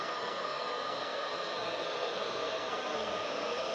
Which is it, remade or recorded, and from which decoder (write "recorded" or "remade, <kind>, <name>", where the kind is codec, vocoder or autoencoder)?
remade, codec, SNAC